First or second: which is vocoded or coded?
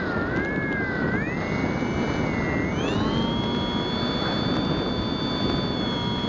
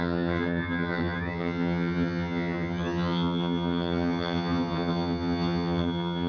second